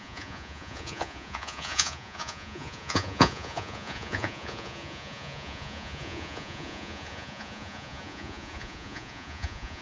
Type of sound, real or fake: fake